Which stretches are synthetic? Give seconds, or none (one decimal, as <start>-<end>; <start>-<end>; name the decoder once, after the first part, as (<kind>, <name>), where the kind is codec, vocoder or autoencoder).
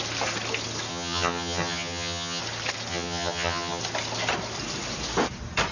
0.9-2.4 (vocoder, HiFi-GAN); 2.9-3.8